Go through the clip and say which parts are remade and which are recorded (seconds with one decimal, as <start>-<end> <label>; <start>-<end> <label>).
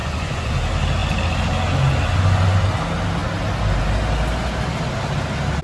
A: 0.0-0.5 remade; 0.5-5.6 recorded